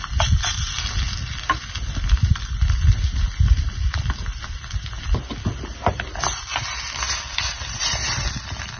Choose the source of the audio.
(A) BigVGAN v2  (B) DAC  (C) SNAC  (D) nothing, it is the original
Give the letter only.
D